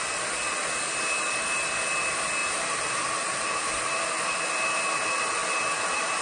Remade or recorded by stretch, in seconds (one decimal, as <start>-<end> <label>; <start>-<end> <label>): 0.0-2.4 recorded; 2.4-4.4 remade; 4.4-5.4 recorded; 5.4-6.2 remade

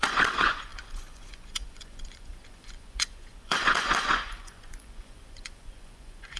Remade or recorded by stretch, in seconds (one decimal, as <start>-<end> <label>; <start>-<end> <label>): 0.0-6.4 remade